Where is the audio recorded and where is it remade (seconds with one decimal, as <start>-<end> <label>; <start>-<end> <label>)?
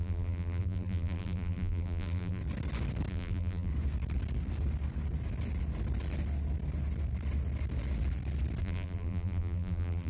0.0-2.4 remade; 2.4-3.1 recorded; 3.1-3.7 remade; 3.7-8.6 recorded; 8.6-10.1 remade